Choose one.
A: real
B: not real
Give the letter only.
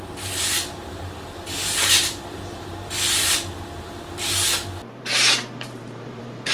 B